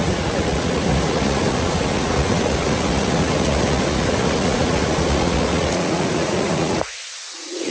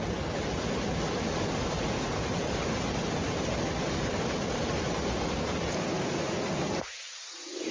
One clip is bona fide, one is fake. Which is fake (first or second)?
first